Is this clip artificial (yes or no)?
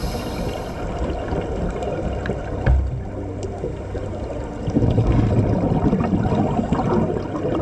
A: no